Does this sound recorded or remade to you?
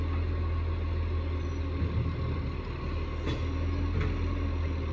recorded